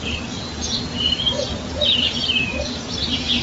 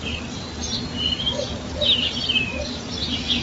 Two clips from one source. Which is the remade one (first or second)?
first